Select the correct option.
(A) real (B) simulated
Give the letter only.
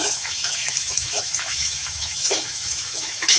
B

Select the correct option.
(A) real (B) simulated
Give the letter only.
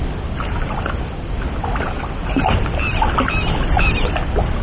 A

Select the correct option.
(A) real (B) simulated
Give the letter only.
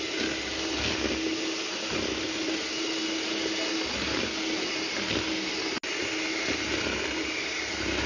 A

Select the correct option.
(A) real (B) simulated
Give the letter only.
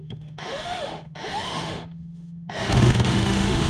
B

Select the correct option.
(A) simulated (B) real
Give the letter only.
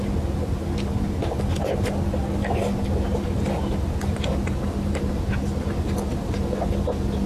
B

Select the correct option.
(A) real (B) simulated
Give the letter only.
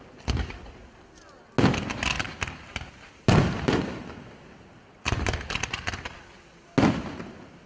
A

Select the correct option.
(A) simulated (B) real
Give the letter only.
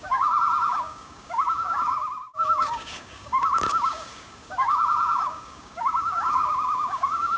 A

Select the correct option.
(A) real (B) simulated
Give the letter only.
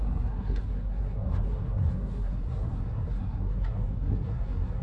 B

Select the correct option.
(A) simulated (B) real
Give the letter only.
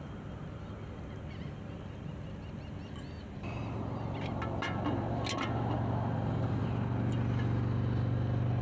B